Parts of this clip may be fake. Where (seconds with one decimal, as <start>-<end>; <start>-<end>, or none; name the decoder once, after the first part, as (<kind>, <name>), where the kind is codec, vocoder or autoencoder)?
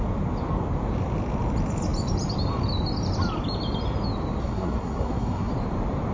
4.4-5.5 (codec, SNAC)